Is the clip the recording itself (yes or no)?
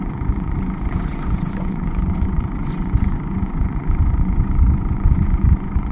no